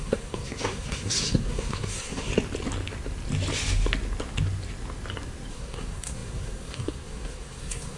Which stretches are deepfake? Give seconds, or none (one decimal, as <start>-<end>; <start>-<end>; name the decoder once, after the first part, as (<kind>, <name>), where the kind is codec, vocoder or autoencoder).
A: 0.0-2.3 (codec, SNAC); 5.5-8.0